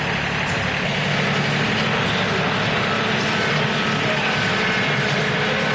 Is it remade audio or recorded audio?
recorded